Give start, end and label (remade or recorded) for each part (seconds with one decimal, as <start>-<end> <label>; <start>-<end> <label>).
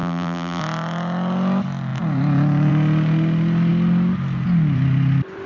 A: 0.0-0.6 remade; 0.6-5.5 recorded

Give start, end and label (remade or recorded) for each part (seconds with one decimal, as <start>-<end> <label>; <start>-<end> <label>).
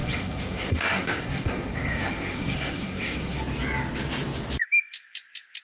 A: 0.0-3.4 remade; 3.4-5.6 recorded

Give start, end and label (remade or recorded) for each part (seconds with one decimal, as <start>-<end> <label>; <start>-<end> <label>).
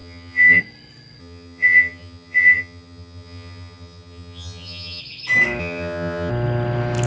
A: 0.0-0.6 remade; 0.6-1.2 recorded; 1.2-5.0 remade; 5.0-5.6 recorded; 5.6-6.3 remade; 6.3-7.1 recorded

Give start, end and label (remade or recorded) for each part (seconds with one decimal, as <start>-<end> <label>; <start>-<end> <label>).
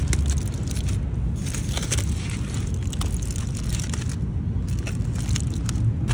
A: 0.0-6.1 recorded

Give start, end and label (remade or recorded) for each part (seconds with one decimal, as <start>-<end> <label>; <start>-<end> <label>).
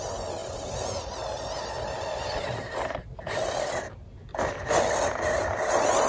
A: 0.0-6.1 recorded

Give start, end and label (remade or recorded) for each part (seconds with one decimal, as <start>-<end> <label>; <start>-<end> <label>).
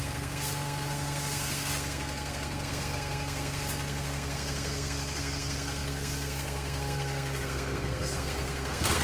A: 0.0-9.0 remade